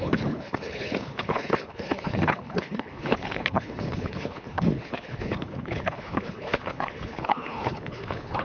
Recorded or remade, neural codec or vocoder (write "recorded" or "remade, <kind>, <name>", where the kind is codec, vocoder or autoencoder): remade, codec, HILCodec